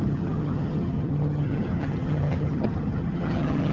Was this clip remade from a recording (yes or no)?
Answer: yes